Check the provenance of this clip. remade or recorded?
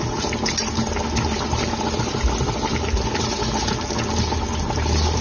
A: recorded